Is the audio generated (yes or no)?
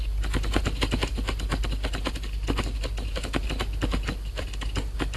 no